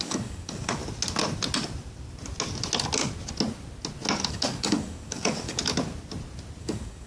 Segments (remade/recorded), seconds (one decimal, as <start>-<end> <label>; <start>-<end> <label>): 0.0-0.8 remade; 0.8-4.3 recorded; 4.3-5.6 remade; 5.6-6.6 recorded; 6.6-7.1 remade